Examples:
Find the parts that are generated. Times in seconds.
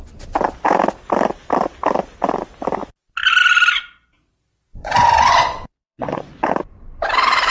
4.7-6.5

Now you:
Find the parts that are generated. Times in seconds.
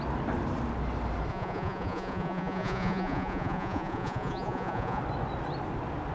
1.3-5.0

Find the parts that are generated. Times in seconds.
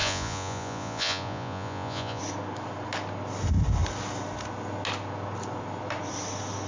0.0-2.2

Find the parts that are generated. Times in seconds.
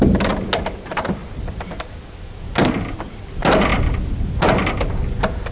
none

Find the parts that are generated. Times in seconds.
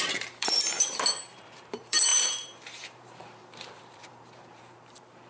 0.0-5.3